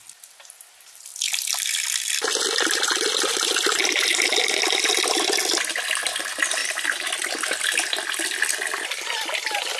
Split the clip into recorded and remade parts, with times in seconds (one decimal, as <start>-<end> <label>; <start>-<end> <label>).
0.0-9.8 recorded